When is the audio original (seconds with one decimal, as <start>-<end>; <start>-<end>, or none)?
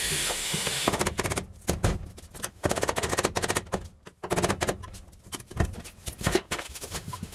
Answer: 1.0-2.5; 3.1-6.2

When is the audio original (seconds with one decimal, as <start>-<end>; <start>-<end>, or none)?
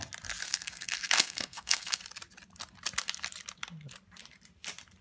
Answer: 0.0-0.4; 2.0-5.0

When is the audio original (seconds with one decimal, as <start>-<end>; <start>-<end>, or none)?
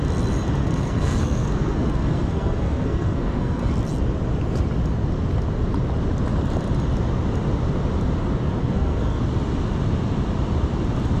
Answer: 0.0-0.6; 3.7-8.6; 9.2-11.2